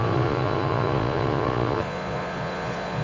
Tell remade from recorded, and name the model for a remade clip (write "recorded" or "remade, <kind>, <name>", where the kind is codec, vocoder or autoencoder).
remade, vocoder, Vocos